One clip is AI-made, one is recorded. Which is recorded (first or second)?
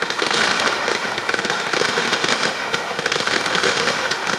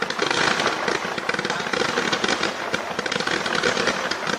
second